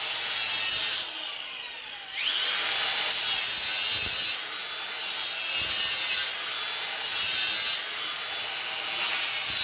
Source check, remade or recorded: recorded